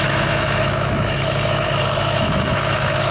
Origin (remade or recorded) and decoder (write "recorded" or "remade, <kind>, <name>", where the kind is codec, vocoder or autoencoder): remade, autoencoder, DAC-VAE